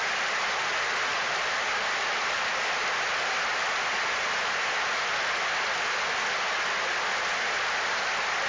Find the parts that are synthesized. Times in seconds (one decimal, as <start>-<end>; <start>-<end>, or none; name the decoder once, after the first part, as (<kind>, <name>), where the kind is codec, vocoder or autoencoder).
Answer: none